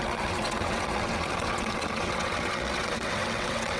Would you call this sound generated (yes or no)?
yes